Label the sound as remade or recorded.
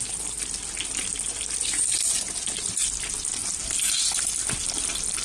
recorded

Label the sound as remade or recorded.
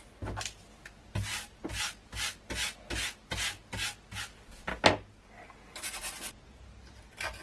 recorded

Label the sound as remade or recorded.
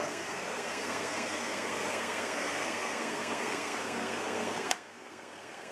remade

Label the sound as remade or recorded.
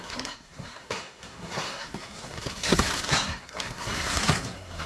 remade